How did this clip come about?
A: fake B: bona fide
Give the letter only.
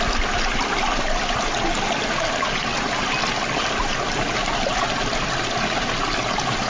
B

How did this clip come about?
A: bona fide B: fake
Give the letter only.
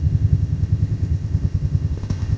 B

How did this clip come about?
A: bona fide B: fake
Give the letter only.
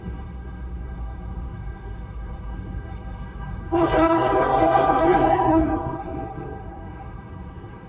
B